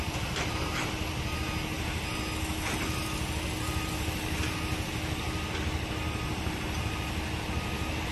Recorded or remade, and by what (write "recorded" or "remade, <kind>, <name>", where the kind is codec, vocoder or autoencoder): recorded